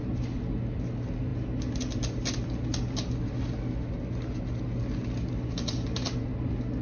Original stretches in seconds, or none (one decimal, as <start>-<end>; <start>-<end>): 0.0-6.8